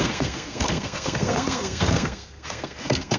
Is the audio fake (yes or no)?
yes